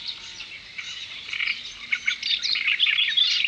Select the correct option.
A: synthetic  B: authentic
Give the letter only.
B